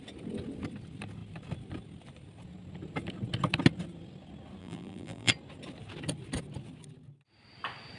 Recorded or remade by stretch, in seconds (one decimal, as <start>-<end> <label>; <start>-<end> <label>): 0.0-4.6 recorded; 4.6-5.3 remade; 5.3-8.0 recorded